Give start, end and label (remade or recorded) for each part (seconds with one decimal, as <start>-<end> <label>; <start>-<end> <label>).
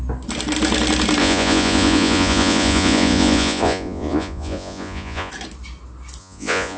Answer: 0.0-1.2 recorded; 1.2-5.3 remade; 5.3-6.2 recorded; 6.2-6.8 remade